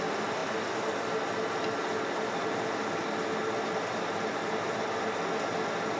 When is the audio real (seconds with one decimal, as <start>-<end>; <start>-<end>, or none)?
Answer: 0.0-6.0